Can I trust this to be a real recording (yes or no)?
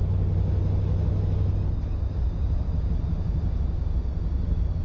yes